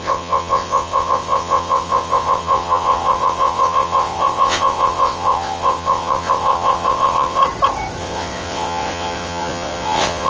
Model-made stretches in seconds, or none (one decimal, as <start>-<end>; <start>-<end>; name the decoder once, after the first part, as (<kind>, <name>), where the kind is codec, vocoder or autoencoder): 0.0-7.4 (vocoder, WaveNeXt); 8.0-10.3